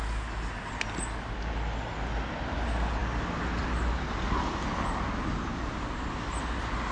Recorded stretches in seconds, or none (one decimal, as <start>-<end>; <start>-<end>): 0.0-6.9